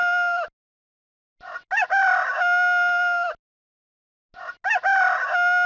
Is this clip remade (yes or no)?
no